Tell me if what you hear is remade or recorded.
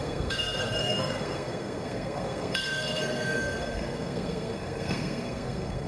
remade